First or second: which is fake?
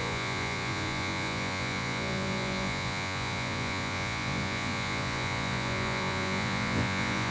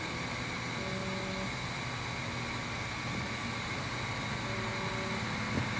first